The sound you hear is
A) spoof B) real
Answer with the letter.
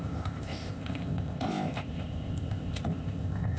A